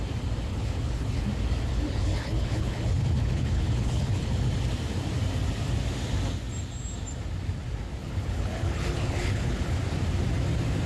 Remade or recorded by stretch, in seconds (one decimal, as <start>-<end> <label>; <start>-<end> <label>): 0.0-0.5 recorded; 0.5-1.2 remade; 1.2-1.7 recorded; 1.7-4.5 remade; 4.5-8.0 recorded; 8.0-9.8 remade; 9.8-10.9 recorded